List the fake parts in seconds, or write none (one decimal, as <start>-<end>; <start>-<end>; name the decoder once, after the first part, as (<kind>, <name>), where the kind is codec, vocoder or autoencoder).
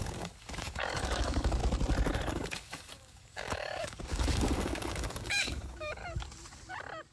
0.0-1.6 (codec, DAC); 2.2-6.0